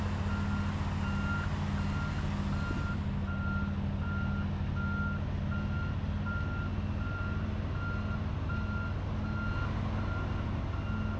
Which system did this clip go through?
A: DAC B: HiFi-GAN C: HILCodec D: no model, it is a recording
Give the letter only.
D